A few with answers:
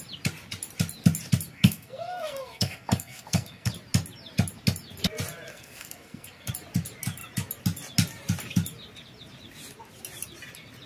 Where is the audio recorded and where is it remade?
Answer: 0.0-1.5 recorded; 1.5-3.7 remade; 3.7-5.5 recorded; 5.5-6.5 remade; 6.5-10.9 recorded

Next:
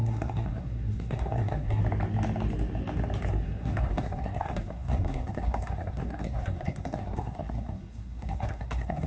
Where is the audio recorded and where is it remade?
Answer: 0.0-1.8 remade; 1.8-3.3 recorded; 3.3-9.1 remade